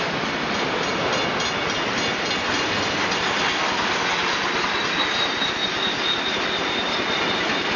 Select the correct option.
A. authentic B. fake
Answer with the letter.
A